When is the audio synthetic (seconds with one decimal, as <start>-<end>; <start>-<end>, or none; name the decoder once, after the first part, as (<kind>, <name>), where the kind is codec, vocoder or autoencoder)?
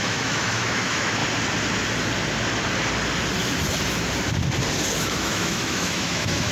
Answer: 0.0-1.2 (autoencoder, DAC-VAE); 5.1-6.5